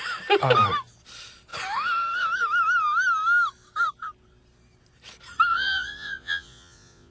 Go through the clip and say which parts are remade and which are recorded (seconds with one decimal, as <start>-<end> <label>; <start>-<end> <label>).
0.0-5.5 recorded; 5.5-7.1 remade